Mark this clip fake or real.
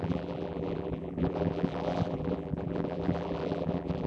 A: fake